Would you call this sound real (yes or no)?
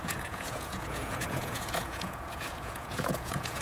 no